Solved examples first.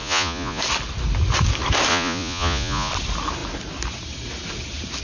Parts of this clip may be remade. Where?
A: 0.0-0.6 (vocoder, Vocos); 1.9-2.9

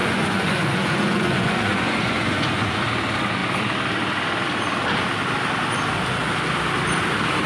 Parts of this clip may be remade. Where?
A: 0.0-2.8 (vocoder, Vocos)

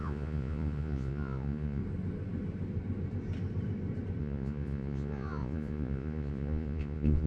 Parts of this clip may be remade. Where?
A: 0.0-1.8 (vocoder, Vocos); 4.2-7.3

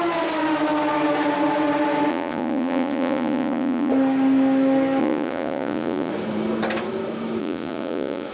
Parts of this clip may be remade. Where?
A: 2.1-3.9 (vocoder, Vocos); 5.0-6.1; 7.4-8.3

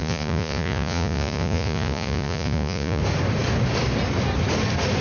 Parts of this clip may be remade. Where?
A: 0.0-3.0 (vocoder, Vocos)

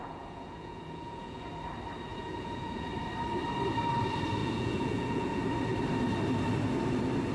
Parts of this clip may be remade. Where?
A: 0.0-1.5 (vocoder, Vocos); 2.1-2.9; 4.4-5.4

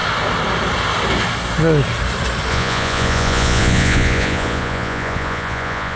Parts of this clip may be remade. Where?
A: 2.5-6.0 (vocoder, Vocos)

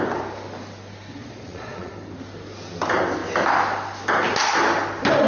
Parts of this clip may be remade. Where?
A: 1.2-1.9 (vocoder, Vocos)